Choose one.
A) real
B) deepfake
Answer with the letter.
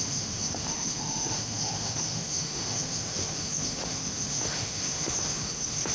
B